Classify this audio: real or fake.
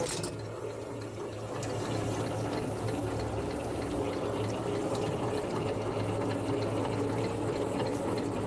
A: real